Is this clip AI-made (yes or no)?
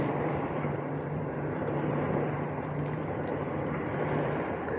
yes